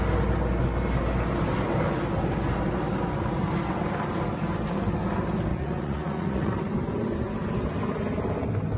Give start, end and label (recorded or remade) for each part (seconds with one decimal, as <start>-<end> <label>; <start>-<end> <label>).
0.0-5.5 recorded; 5.5-6.6 remade; 6.6-8.8 recorded